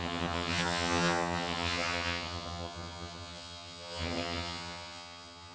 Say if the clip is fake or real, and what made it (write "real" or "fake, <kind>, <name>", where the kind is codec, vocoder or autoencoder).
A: fake, vocoder, HiFi-GAN